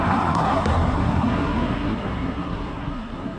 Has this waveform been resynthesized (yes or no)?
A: yes